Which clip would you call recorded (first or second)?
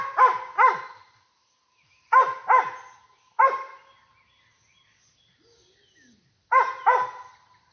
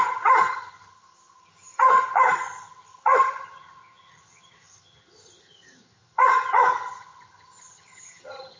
first